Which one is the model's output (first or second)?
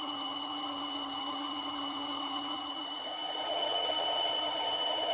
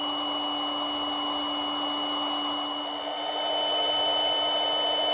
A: first